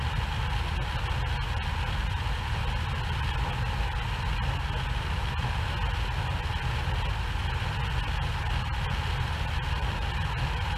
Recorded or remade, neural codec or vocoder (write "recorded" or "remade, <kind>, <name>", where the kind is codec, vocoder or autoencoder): recorded